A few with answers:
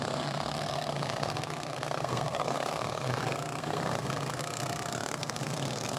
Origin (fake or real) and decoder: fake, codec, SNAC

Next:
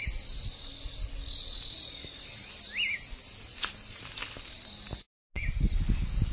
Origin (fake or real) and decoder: real